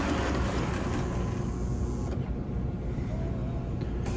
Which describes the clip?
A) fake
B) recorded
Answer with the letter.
B